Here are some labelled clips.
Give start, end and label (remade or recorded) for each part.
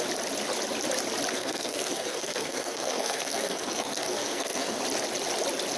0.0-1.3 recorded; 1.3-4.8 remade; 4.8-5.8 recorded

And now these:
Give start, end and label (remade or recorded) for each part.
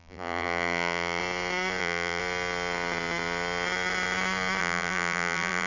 0.0-1.2 remade; 1.2-1.8 recorded; 1.8-2.2 remade; 2.2-4.6 recorded; 4.6-5.7 remade